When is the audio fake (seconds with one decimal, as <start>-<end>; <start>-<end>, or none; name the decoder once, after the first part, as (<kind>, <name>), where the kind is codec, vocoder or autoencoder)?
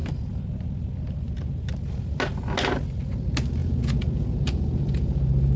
3.6-5.6 (vocoder, Vocos)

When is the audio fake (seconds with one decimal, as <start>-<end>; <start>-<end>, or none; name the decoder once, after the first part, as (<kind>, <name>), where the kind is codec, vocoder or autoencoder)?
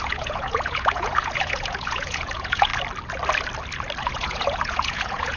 0.0-2.7 (vocoder, Vocos); 4.0-5.4